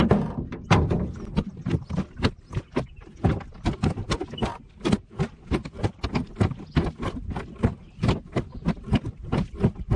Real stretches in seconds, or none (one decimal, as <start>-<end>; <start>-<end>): 0.0-10.0